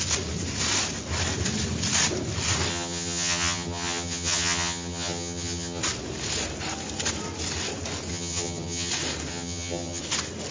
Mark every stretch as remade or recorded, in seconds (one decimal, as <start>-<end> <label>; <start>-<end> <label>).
0.0-2.7 recorded; 2.7-5.8 remade; 5.8-8.1 recorded; 8.1-8.9 remade; 8.9-9.3 recorded; 9.3-10.0 remade; 10.0-10.5 recorded